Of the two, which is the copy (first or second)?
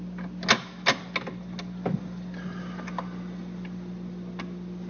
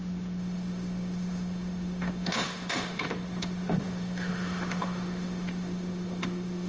second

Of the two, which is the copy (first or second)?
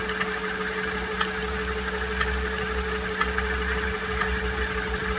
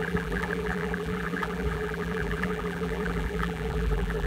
second